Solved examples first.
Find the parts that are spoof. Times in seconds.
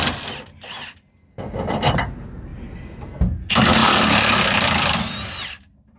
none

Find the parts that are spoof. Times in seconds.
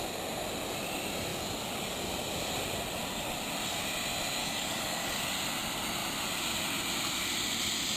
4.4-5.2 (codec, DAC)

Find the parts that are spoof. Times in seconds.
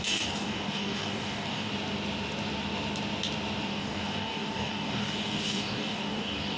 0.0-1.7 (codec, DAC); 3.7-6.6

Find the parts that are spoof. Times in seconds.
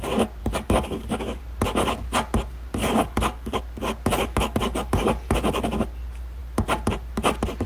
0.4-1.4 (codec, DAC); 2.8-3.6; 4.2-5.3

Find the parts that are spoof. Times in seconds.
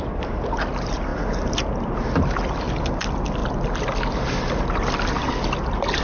none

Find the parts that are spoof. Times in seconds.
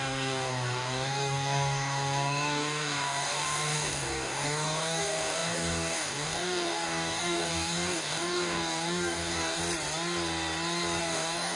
0.0-9.6 (codec, DAC); 11.0-11.6